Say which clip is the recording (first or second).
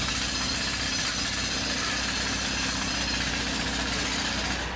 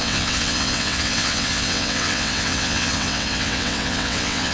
first